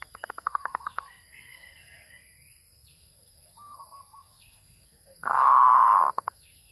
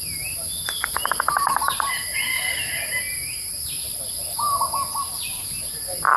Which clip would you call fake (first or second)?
first